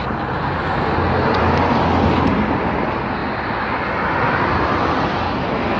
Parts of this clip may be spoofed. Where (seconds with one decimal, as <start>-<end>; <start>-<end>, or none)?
none